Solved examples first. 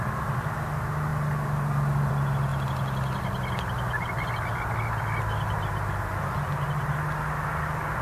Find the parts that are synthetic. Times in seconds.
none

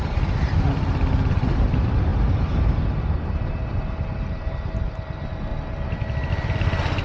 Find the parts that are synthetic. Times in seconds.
0.0-2.1; 4.3-5.5; 6.3-7.0

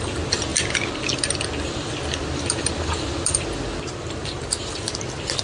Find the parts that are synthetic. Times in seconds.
none

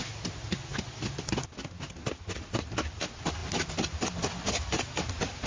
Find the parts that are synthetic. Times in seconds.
none